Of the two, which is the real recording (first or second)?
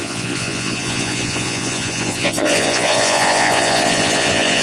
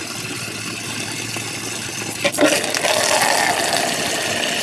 second